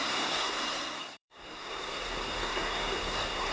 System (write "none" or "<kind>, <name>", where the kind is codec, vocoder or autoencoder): codec, SNAC